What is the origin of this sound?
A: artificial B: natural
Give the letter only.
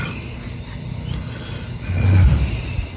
B